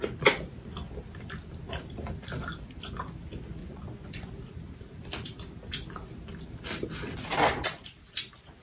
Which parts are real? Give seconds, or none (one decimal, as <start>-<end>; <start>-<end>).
0.0-3.6; 4.3-8.6